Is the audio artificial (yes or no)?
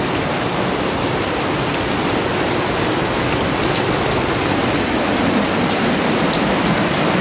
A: no